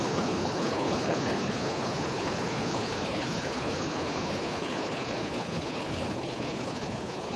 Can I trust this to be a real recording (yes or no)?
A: no